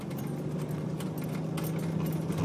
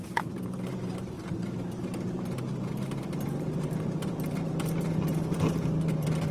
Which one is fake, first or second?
second